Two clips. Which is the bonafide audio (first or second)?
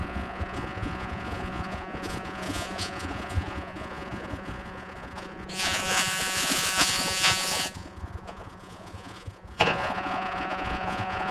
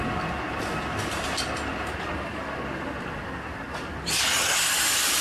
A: second